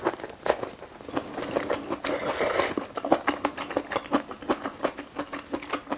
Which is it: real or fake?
real